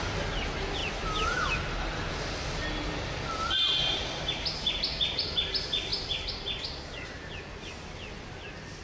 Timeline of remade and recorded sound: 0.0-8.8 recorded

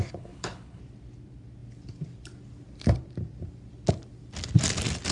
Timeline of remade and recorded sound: 0.0-0.8 remade; 0.8-5.1 recorded

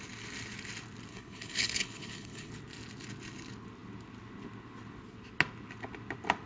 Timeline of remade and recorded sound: 0.0-1.1 recorded; 1.1-2.5 remade; 2.5-6.5 recorded

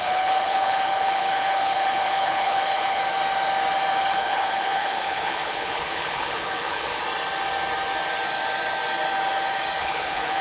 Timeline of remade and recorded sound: 0.0-3.0 remade; 3.0-4.0 recorded; 4.0-7.0 remade; 7.0-9.8 recorded; 9.8-10.4 remade